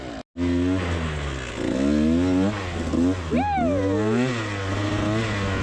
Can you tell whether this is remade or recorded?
recorded